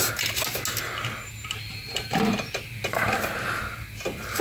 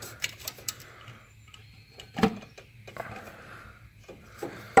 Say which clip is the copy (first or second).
second